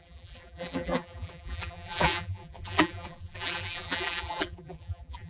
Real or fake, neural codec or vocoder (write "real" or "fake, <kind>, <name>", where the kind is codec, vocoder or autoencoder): fake, vocoder, BigVGAN v2